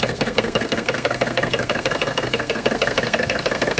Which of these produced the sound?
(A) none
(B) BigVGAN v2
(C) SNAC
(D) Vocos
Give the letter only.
C